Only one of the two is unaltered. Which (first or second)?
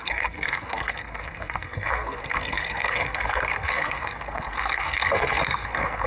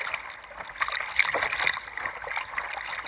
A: second